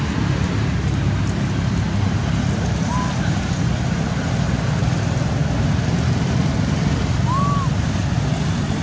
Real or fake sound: real